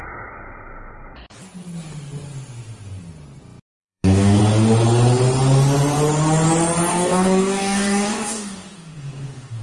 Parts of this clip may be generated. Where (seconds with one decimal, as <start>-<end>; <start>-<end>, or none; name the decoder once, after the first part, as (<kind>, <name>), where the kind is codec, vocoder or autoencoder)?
3.8-4.4 (codec, DAC); 6.9-9.6